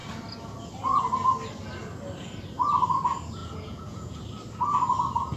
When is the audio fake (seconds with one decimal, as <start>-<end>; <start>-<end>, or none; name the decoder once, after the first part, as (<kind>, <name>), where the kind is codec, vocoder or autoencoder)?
3.4-4.2 (vocoder, Vocos)